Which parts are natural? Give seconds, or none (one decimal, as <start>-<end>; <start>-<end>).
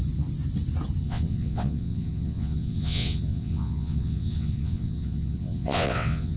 0.0-1.0